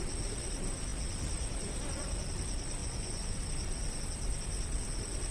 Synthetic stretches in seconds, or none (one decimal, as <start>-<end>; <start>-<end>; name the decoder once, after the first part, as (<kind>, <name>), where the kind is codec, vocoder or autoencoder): 2.8-3.4 (vocoder, Vocos)